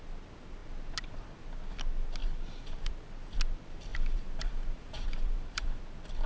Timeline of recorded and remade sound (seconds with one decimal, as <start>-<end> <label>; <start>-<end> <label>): 0.0-2.2 recorded; 2.2-2.9 remade; 2.9-3.9 recorded; 3.9-5.8 remade; 5.8-6.3 recorded